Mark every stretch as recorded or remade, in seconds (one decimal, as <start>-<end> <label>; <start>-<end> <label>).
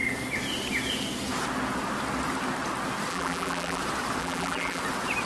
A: 0.0-3.1 recorded; 3.1-3.8 remade; 3.8-4.2 recorded; 4.2-4.8 remade; 4.8-5.3 recorded